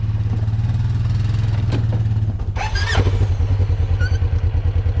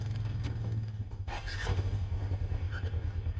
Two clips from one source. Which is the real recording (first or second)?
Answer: first